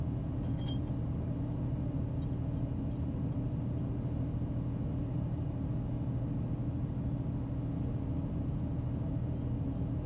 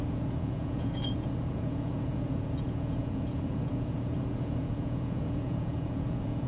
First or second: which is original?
first